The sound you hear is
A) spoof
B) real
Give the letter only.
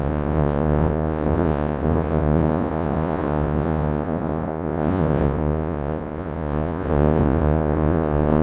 A